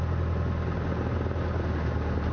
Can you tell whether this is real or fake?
real